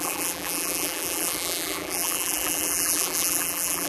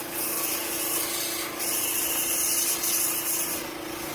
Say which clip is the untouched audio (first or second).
second